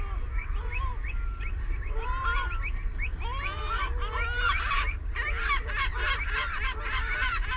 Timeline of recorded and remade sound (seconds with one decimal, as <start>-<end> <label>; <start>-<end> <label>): 0.0-0.9 remade; 0.9-1.6 recorded; 1.6-2.3 remade; 2.3-4.6 recorded; 4.6-7.6 remade